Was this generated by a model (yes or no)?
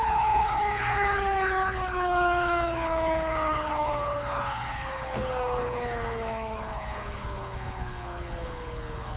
yes